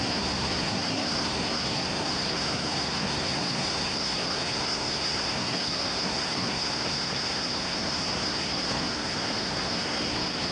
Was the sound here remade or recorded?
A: remade